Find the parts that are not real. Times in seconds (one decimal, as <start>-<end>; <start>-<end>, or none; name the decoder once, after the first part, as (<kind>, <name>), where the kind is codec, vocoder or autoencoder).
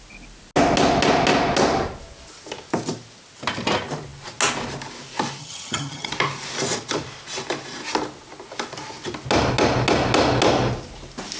5.4-6.1 (vocoder, HiFi-GAN)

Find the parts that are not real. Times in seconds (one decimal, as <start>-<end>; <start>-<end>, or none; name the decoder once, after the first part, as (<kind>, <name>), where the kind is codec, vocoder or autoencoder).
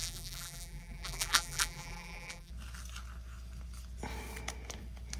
0.0-2.5 (vocoder, BigVGAN v2)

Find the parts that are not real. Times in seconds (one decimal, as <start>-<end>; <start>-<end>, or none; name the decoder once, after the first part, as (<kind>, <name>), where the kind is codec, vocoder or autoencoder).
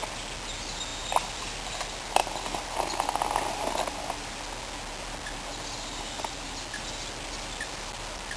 none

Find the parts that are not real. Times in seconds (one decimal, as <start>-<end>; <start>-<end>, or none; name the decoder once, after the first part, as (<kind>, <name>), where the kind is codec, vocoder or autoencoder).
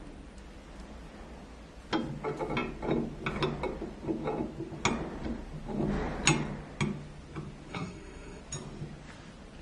7.7-8.4 (codec, SNAC)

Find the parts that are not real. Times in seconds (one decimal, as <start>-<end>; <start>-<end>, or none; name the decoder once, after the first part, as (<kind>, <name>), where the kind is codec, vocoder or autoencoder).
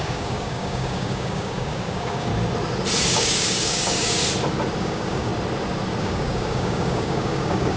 0.0-2.3 (codec, DAC); 3.0-4.2; 4.8-5.3; 6.0-7.8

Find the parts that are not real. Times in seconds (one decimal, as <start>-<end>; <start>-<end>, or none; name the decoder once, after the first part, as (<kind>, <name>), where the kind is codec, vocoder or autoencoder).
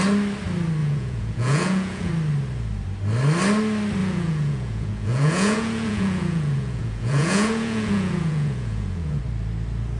0.8-2.1 (vocoder, Vocos); 4.0-9.2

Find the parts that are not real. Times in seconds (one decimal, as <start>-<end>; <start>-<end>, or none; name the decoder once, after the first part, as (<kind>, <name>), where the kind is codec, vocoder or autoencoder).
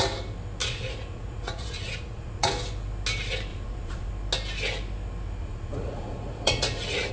0.6-2.5 (vocoder, Vocos); 3.5-4.1; 5.4-7.1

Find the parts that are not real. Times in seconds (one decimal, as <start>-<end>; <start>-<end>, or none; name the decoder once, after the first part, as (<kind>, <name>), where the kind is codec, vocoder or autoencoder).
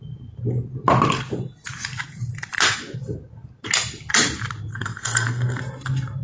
4.7-5.6 (codec, SNAC)